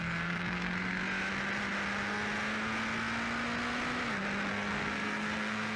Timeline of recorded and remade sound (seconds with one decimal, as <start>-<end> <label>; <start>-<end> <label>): 0.0-1.0 remade; 1.0-4.5 recorded; 4.5-5.8 remade